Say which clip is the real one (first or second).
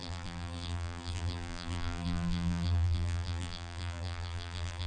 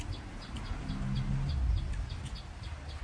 second